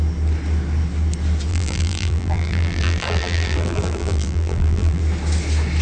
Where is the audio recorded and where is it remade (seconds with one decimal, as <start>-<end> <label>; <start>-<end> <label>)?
0.0-1.5 recorded; 1.5-5.0 remade; 5.0-5.8 recorded